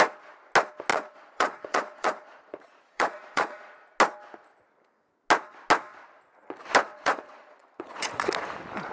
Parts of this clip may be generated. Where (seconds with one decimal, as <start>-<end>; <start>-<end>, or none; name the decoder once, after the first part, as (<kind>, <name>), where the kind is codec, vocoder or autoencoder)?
0.9-3.9 (vocoder, Vocos); 6.9-8.3